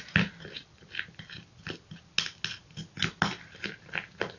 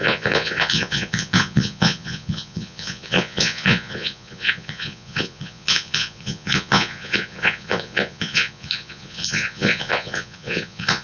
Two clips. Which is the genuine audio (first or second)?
first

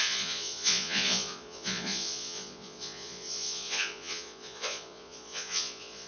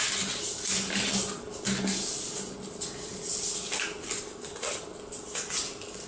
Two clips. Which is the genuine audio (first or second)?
second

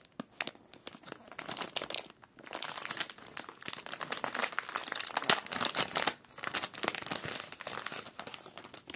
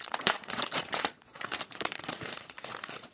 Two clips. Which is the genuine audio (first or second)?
first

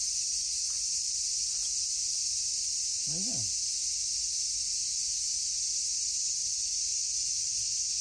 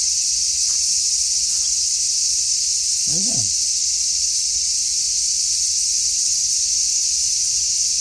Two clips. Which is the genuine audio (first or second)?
first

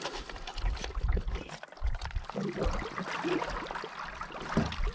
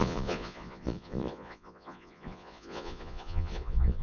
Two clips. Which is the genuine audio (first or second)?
first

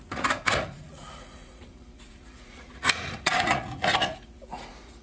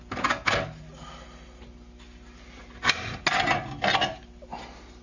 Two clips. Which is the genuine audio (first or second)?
second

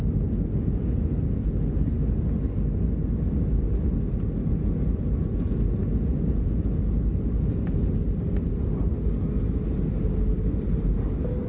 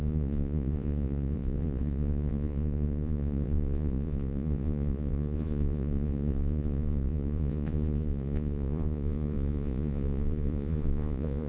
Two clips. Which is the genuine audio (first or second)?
first